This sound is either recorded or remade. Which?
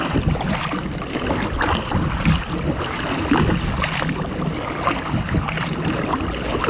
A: recorded